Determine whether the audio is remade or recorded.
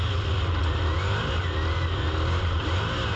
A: recorded